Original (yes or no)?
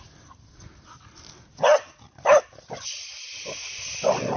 yes